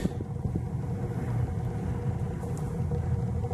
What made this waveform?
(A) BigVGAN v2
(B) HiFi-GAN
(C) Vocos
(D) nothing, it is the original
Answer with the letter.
D